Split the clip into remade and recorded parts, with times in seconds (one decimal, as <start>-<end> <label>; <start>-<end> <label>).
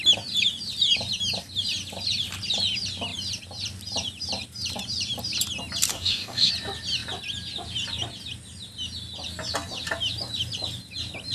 0.0-5.9 recorded; 5.9-6.5 remade; 6.5-11.3 recorded